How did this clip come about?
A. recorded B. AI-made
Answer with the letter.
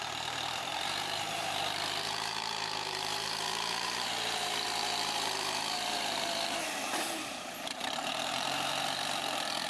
B